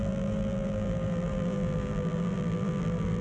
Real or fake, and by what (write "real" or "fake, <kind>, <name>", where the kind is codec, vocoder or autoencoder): fake, vocoder, BigVGAN v2